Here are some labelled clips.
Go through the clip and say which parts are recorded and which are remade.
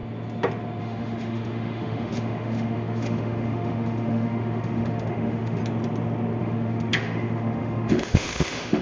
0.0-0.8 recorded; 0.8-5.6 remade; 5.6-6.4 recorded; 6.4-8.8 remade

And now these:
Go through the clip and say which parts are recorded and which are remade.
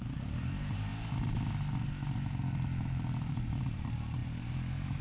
0.0-0.9 remade; 0.9-3.3 recorded; 3.3-5.0 remade